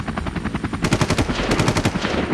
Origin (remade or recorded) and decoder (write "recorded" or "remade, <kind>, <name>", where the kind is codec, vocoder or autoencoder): recorded